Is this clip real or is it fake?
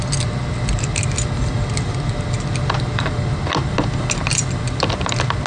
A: real